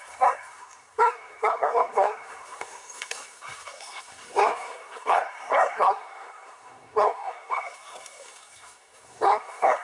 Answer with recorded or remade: remade